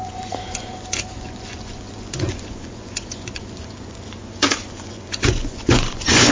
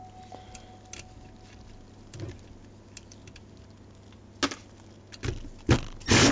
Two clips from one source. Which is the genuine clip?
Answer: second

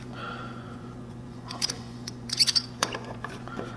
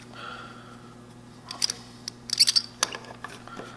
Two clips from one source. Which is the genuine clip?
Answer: second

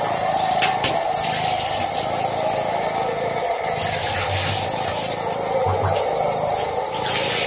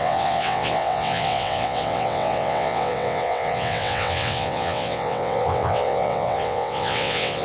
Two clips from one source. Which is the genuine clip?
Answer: first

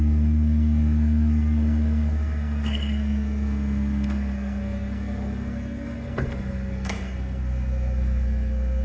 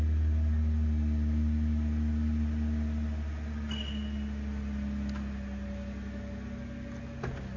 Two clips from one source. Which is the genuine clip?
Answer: second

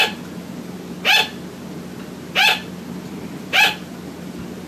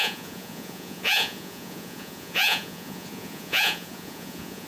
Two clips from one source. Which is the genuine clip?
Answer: first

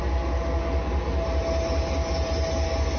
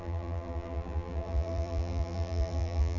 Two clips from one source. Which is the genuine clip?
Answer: first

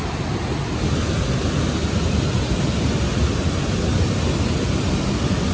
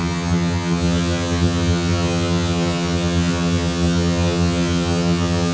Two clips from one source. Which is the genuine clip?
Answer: first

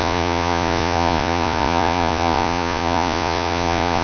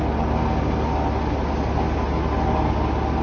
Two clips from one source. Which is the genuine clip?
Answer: second